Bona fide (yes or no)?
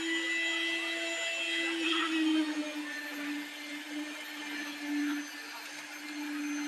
yes